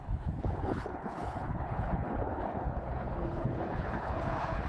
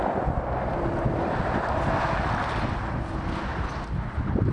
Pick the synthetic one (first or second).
first